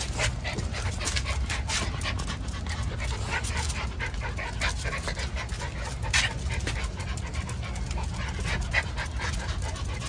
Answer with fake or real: real